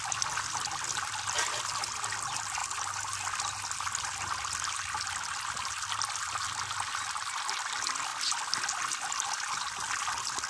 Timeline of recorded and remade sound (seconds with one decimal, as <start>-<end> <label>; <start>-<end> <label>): 0.0-10.5 recorded